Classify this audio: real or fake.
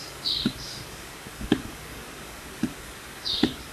fake